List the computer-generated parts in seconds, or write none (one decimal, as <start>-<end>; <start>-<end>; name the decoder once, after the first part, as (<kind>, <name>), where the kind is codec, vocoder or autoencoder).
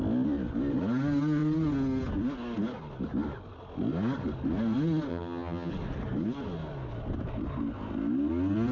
5.1-5.7 (vocoder, HiFi-GAN)